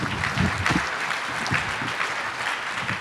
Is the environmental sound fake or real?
real